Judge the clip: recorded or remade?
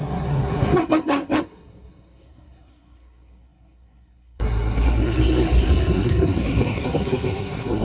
remade